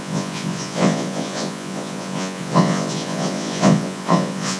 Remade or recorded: remade